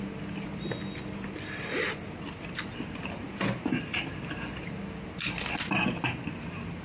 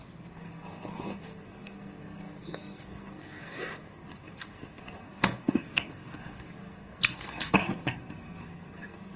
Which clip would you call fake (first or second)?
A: second